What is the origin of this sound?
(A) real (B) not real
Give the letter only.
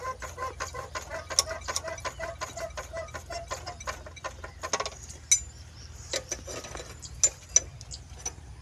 A